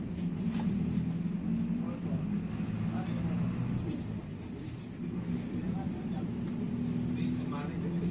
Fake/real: real